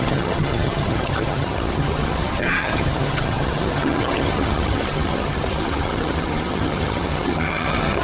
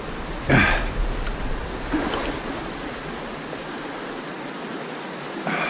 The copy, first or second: first